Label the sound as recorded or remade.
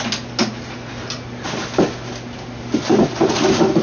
recorded